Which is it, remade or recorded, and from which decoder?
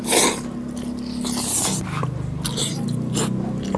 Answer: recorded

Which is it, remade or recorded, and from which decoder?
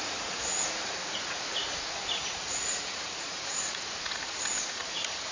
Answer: remade, vocoder, Vocos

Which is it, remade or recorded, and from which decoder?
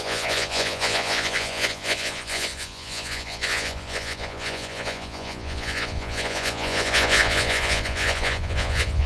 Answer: remade, vocoder, Vocos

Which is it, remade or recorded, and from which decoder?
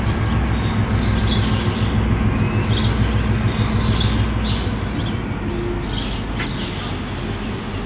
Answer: recorded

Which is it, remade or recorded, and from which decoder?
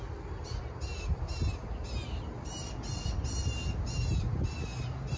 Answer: recorded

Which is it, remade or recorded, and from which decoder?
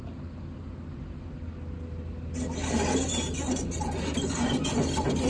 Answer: recorded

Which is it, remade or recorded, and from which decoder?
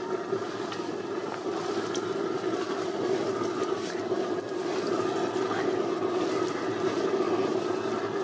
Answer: recorded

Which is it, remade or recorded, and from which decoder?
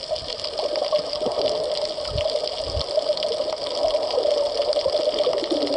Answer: recorded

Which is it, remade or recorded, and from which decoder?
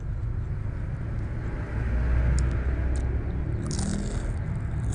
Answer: recorded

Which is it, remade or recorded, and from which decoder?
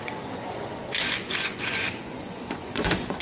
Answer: remade, vocoder, Vocos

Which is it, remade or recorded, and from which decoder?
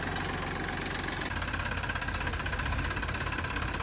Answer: recorded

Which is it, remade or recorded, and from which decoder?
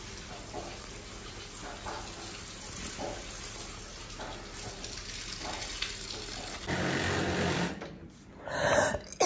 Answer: recorded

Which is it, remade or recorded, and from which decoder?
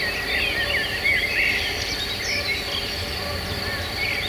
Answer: recorded